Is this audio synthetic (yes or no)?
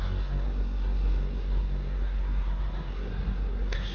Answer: yes